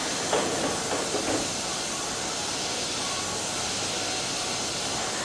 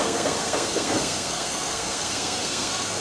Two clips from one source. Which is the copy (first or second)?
second